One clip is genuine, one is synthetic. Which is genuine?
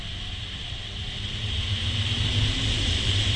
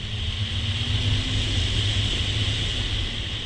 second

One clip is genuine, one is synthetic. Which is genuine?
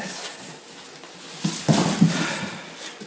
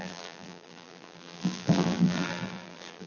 first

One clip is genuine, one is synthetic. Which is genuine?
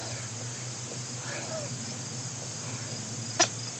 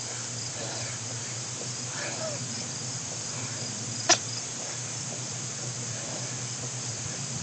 first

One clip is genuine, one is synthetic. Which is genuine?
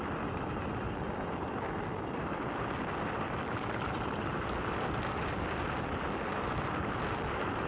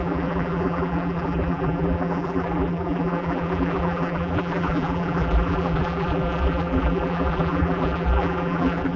first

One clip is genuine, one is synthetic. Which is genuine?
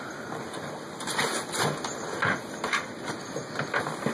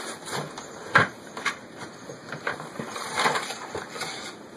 first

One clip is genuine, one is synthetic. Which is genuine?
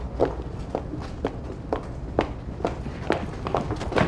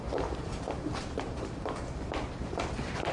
first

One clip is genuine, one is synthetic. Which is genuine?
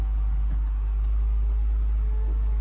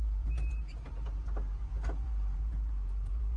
first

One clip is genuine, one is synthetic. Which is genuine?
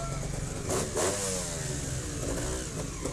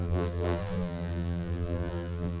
first